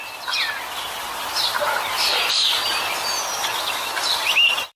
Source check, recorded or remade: remade